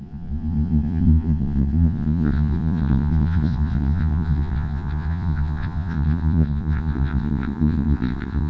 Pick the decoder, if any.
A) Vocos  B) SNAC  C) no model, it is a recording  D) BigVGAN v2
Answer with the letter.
A